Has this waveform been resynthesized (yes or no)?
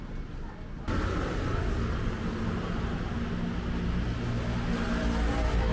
no